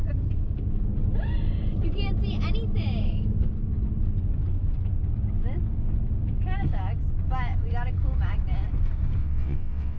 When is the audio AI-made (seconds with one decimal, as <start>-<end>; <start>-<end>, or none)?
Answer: 9.2-10.0